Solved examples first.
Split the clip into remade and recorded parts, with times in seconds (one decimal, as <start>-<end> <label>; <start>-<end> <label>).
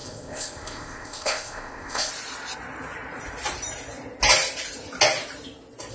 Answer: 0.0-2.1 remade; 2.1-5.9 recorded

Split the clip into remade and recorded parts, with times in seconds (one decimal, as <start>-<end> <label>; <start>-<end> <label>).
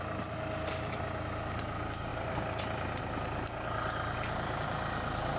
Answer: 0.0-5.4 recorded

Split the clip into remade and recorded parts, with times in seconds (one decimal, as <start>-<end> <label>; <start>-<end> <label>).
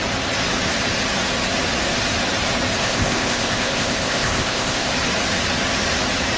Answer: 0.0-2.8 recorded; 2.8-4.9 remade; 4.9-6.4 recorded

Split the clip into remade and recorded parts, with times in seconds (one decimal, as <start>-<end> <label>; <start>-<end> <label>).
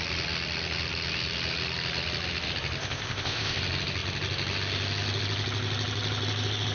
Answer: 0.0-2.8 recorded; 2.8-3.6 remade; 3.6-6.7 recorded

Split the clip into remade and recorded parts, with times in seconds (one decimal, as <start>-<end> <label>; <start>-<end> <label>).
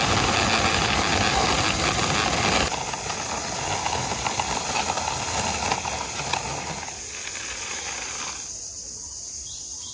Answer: 0.0-9.9 recorded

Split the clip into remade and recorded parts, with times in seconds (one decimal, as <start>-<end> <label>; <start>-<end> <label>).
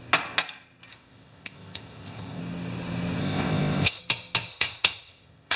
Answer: 0.0-0.9 recorded; 0.9-2.4 remade; 2.4-3.2 recorded; 3.2-4.0 remade; 4.0-4.5 recorded; 4.5-5.6 remade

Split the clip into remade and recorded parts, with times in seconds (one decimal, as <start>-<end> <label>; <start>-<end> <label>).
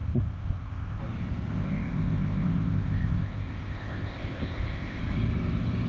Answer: 0.0-1.0 remade; 1.0-1.5 recorded; 1.5-5.0 remade; 5.0-5.9 recorded